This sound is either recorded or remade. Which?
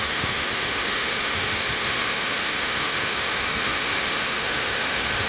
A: remade